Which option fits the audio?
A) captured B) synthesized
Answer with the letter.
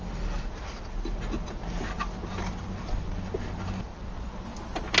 A